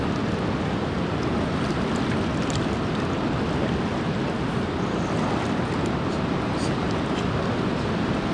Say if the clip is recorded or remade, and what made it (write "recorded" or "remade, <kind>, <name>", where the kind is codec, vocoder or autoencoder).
recorded